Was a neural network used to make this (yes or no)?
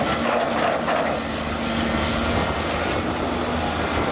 no